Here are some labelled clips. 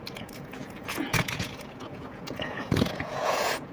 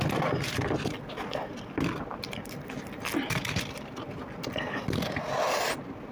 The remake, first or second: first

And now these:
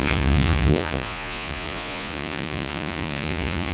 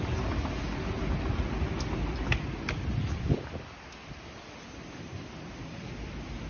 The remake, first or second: first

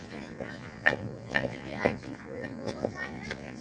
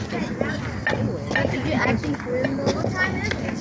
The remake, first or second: first